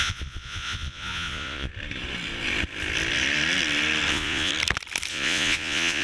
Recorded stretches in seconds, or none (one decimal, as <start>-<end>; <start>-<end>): 1.7-4.1; 4.5-5.1